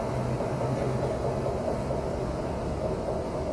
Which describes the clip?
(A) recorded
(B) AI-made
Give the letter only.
A